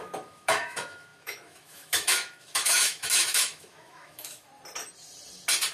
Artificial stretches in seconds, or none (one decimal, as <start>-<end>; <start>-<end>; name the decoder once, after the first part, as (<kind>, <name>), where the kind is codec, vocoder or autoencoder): 0.0-4.5 (autoencoder, DAC-VAE)